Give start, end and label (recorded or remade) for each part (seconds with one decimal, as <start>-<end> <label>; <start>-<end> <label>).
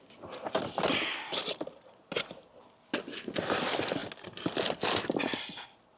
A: 0.0-6.0 recorded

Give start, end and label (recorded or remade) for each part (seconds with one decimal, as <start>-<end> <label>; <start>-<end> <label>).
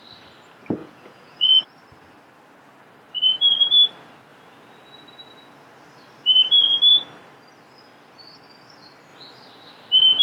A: 0.0-0.8 recorded; 0.8-1.6 remade; 1.6-10.2 recorded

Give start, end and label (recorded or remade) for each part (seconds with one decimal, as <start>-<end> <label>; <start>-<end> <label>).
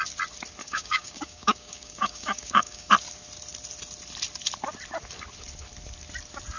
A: 0.0-0.6 recorded; 0.6-2.9 remade; 2.9-6.6 recorded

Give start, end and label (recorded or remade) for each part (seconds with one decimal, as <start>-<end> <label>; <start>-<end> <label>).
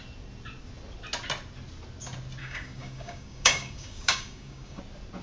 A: 0.0-2.4 recorded; 2.4-4.8 remade; 4.8-5.2 recorded